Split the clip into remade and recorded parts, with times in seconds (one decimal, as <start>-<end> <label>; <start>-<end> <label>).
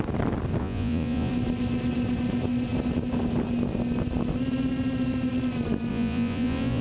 0.0-0.6 recorded; 0.6-1.3 remade; 1.3-5.9 recorded; 5.9-6.8 remade